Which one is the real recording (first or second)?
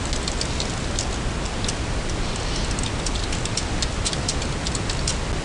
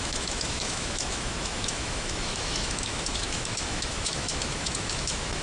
first